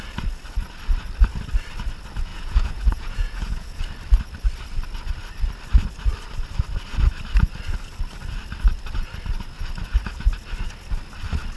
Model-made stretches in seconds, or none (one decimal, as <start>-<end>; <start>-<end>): 2.3-3.8